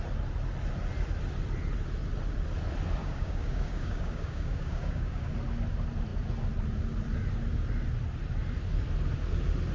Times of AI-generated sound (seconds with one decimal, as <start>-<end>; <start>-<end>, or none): 3.0-5.3